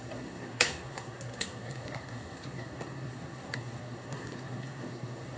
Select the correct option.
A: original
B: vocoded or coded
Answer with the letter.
B